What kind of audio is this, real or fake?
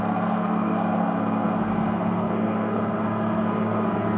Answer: fake